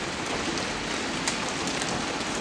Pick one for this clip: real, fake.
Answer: real